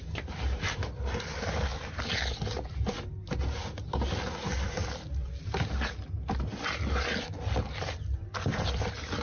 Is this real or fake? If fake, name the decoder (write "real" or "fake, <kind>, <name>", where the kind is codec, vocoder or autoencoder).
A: real